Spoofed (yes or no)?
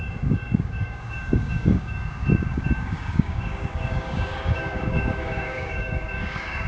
yes